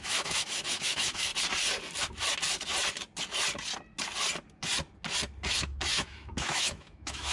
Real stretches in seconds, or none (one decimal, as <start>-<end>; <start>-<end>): 1.3-5.5